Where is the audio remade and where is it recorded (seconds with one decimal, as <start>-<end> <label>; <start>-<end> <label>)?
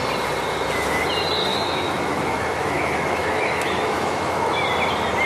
0.0-1.5 recorded; 1.5-4.6 remade; 4.6-5.3 recorded